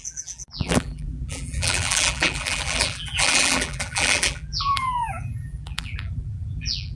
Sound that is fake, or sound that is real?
fake